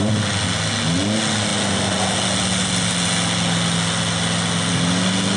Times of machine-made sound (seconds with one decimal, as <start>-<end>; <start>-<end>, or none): none